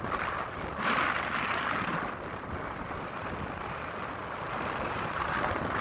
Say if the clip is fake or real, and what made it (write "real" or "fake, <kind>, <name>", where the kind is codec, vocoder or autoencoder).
real